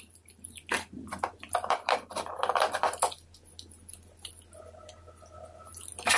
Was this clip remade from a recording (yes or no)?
yes